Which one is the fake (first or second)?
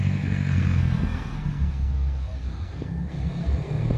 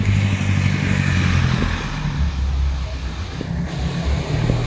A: first